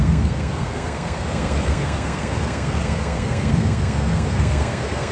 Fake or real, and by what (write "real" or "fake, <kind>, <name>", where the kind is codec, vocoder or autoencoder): fake, codec, SNAC